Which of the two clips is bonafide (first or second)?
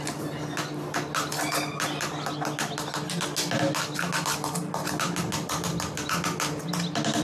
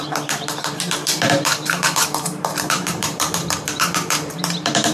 first